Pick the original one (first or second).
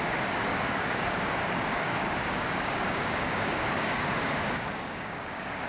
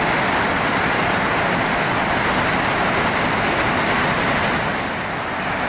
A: second